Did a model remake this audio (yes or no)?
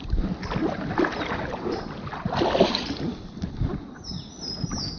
no